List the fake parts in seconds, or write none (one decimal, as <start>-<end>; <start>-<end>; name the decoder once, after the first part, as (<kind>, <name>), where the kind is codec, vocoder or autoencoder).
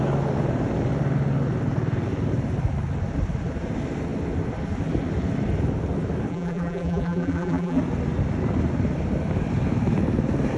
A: 6.3-7.8 (vocoder, BigVGAN v2)